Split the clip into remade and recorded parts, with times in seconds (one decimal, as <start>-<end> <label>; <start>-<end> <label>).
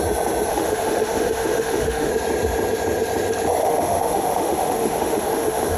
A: 0.0-0.5 recorded; 0.5-2.1 remade; 2.1-3.6 recorded; 3.6-5.8 remade